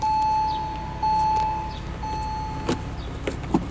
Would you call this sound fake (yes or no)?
no